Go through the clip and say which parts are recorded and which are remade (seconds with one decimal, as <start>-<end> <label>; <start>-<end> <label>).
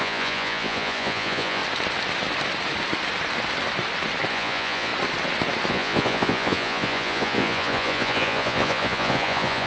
0.0-1.6 remade; 1.6-4.3 recorded; 4.3-4.9 remade; 4.9-5.7 recorded; 5.7-9.7 remade